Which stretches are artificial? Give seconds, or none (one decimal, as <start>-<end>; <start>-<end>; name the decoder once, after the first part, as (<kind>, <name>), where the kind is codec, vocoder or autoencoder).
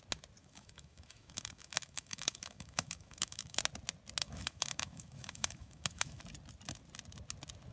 0.4-3.6 (autoencoder, DAC-VAE); 4.2-6.2